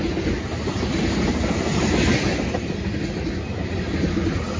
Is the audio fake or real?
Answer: real